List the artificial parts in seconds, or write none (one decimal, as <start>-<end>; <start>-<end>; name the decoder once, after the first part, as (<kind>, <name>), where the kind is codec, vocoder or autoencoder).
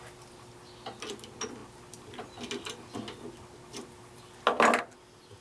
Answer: none